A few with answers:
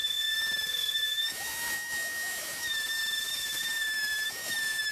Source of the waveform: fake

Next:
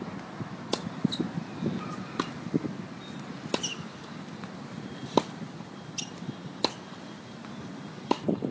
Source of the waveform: real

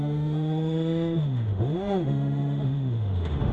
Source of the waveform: fake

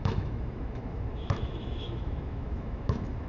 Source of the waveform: fake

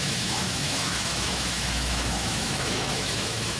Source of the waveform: fake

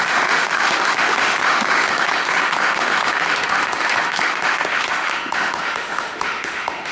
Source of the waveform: fake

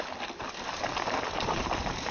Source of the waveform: real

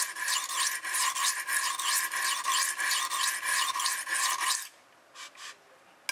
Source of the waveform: real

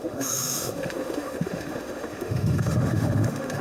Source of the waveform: fake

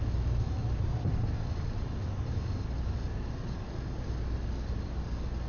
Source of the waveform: real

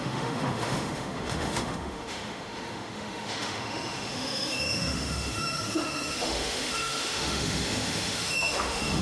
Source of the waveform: fake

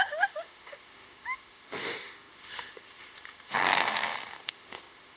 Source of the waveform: fake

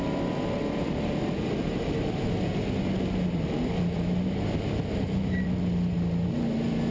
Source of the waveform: real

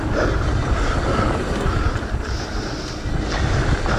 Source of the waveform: real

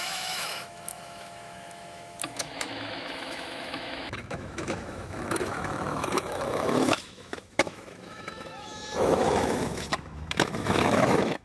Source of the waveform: fake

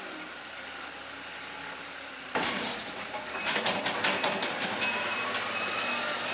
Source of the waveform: real